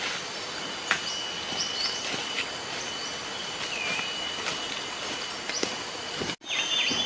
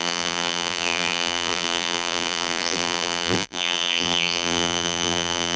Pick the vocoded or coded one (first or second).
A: second